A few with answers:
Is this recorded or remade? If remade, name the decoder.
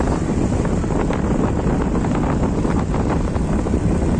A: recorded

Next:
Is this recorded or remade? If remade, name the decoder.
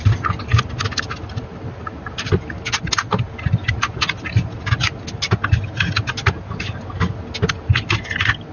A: recorded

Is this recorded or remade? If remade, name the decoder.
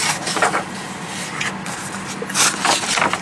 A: recorded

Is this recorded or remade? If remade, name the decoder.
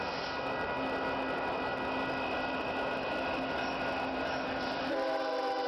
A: recorded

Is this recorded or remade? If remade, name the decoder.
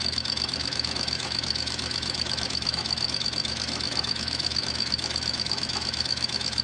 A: remade, autoencoder, DAC-VAE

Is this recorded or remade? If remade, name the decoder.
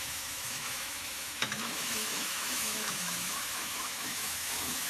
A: remade, autoencoder, DAC-VAE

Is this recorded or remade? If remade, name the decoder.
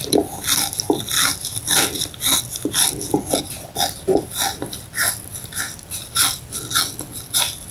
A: recorded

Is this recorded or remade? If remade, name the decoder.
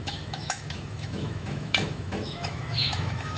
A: remade, autoencoder, DAC-VAE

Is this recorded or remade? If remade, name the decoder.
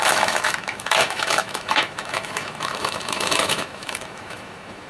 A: remade, autoencoder, DAC-VAE